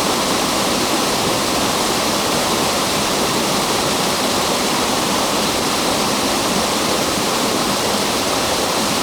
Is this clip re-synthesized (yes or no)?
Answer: yes